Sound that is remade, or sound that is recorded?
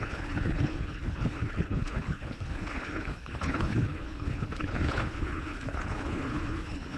remade